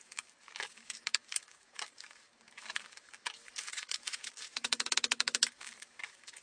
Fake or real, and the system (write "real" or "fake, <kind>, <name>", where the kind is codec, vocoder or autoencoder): fake, codec, DAC